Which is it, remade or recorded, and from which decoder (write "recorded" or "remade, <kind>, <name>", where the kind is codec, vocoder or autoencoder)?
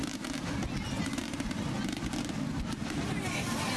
recorded